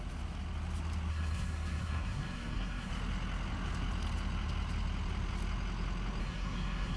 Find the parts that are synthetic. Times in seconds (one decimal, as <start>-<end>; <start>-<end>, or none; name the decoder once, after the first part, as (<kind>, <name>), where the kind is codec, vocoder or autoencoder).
1.1-2.9 (codec, SNAC); 6.2-7.0